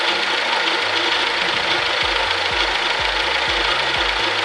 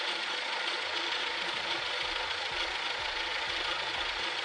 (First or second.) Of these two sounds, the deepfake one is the second